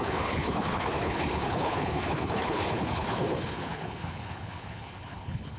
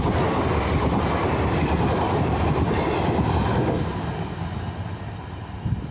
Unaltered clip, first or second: second